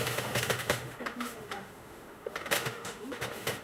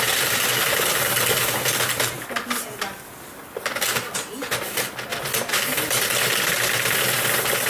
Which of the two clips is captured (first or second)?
second